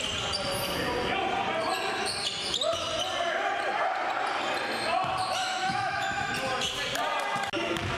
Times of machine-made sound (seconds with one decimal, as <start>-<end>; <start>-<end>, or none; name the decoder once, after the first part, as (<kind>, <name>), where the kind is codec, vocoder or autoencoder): 5.4-6.3 (autoencoder, DAC-VAE)